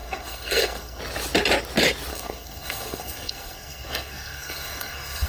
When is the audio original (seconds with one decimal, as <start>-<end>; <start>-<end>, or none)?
1.0-2.1